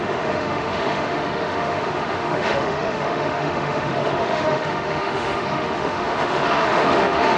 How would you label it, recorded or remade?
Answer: remade